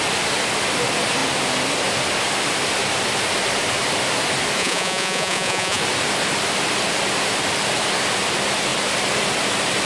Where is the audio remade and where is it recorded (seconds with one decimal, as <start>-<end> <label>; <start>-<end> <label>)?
0.0-4.6 recorded; 4.6-5.8 remade; 5.8-9.9 recorded